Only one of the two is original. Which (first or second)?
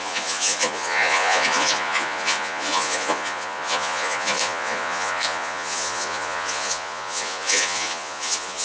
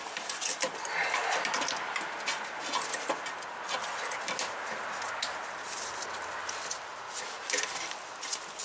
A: second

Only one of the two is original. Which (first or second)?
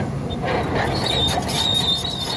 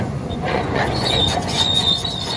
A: first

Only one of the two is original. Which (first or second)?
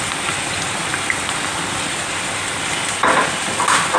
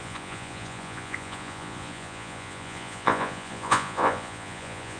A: first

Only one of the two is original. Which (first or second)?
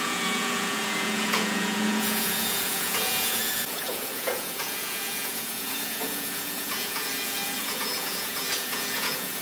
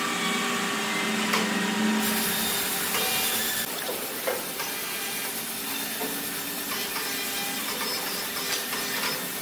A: second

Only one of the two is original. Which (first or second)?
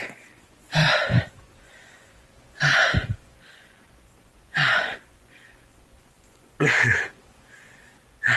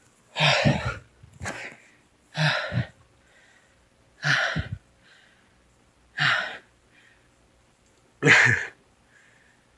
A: second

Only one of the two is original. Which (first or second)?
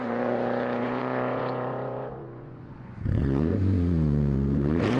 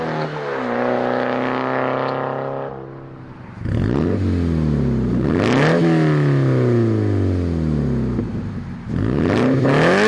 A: second